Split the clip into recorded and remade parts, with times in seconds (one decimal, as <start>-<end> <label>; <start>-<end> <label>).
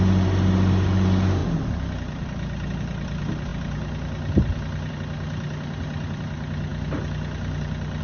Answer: 0.0-8.0 recorded